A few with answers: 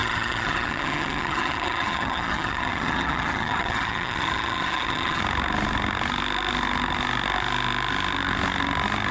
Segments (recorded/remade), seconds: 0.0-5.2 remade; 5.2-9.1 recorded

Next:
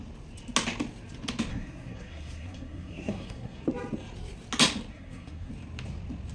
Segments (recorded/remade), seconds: 0.0-1.5 recorded; 1.5-3.6 remade; 3.6-4.9 recorded; 4.9-5.5 remade; 5.5-6.3 recorded

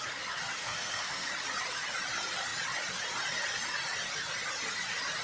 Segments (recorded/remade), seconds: 0.0-0.6 recorded; 0.6-1.3 remade; 1.3-5.2 recorded

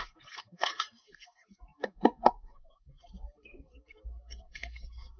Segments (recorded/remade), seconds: 0.0-5.2 remade

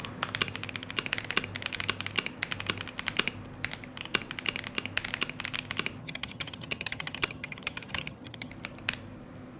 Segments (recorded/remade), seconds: 0.0-6.0 recorded; 6.0-8.5 remade; 8.5-9.6 recorded

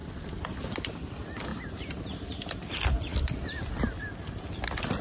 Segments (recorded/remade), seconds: 0.0-5.0 recorded

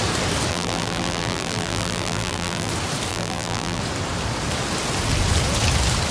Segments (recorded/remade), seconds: 0.0-0.5 recorded; 0.5-2.7 remade; 2.7-3.1 recorded; 3.1-3.8 remade; 3.8-6.1 recorded